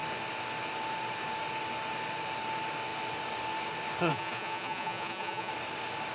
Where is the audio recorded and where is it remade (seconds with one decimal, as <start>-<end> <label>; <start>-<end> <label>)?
0.0-4.1 recorded; 4.1-5.5 remade; 5.5-6.1 recorded